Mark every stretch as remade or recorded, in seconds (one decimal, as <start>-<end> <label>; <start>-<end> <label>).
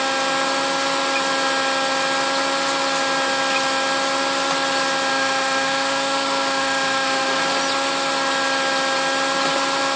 0.0-5.1 recorded; 5.1-7.4 remade; 7.4-10.0 recorded